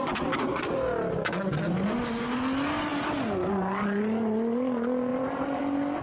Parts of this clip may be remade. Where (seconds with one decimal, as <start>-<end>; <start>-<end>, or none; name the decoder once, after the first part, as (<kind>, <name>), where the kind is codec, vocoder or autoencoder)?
5.1-5.6 (vocoder, BigVGAN v2)